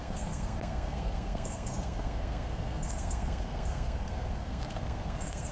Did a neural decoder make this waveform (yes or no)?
yes